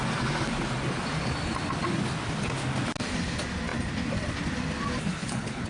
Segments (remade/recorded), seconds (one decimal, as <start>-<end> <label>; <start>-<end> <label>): 0.0-5.2 recorded; 5.2-5.7 remade